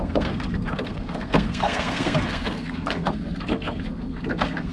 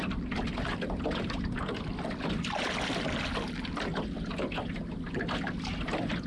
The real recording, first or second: second